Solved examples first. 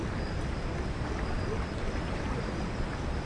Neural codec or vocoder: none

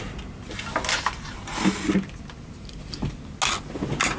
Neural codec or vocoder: none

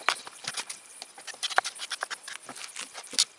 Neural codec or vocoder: none